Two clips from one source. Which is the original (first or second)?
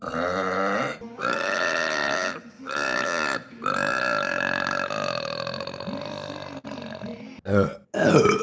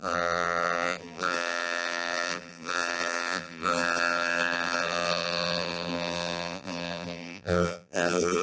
first